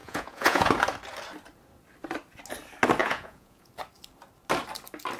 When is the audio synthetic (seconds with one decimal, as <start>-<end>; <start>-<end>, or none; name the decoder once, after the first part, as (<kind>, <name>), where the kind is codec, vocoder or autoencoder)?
0.0-0.7 (vocoder, Vocos); 3.0-3.7